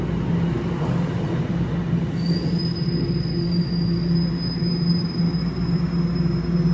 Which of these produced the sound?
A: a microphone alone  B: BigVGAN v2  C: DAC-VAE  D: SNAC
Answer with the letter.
A